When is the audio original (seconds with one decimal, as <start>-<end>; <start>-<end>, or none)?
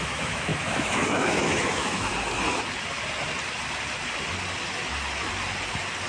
2.1-6.1